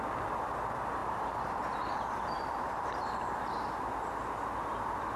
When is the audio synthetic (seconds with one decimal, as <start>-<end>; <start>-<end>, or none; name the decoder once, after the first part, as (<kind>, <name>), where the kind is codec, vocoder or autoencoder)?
1.0-3.6 (vocoder, BigVGAN v2)